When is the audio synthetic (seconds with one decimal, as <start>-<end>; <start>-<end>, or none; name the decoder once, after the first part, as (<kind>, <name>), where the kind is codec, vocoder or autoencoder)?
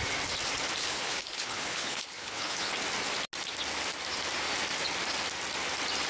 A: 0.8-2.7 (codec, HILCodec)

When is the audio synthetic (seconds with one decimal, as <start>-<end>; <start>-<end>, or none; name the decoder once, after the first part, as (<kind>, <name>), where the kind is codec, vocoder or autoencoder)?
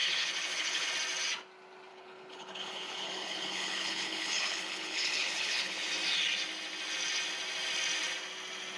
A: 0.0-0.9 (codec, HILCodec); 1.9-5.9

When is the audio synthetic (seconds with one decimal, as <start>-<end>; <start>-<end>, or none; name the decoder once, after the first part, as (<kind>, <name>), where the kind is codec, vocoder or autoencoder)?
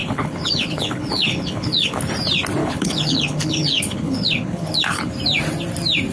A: 0.0-2.0 (codec, HILCodec); 2.6-5.1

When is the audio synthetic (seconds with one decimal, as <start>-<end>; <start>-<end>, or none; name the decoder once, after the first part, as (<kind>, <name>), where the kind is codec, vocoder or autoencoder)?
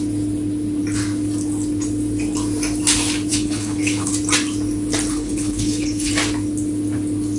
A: 3.3-4.1 (codec, HILCodec); 5.1-6.1